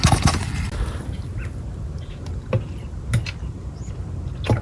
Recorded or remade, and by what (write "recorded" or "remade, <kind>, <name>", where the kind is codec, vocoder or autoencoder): recorded